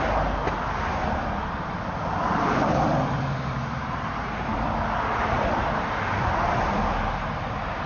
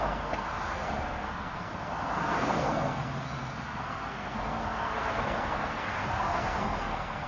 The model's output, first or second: second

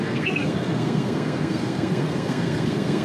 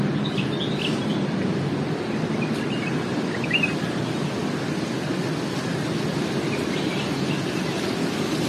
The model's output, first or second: first